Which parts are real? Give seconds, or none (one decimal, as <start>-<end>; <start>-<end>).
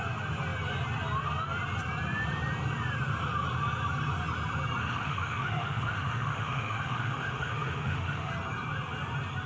0.0-4.8; 8.3-9.5